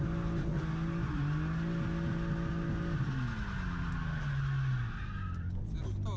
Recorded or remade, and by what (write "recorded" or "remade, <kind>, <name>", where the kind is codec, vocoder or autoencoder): recorded